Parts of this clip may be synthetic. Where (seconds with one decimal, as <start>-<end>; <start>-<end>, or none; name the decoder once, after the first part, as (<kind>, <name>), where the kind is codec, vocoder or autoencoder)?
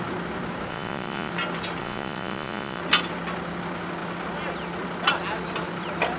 0.7-1.3 (vocoder, Vocos); 1.8-2.8